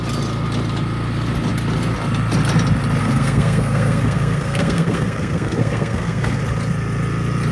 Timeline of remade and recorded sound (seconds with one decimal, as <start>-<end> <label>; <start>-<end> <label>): 0.0-3.0 recorded; 3.0-6.4 remade; 6.4-7.5 recorded